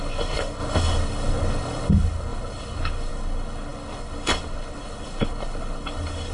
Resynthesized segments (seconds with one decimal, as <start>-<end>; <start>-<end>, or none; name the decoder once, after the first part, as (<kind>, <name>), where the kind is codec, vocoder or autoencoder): 0.0-6.3 (codec, HILCodec)